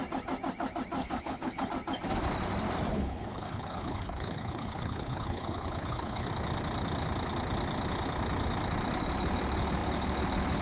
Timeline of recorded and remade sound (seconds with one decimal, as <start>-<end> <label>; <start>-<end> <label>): 0.0-1.0 recorded; 1.0-1.7 remade; 1.7-2.9 recorded; 2.9-6.3 remade; 6.3-10.6 recorded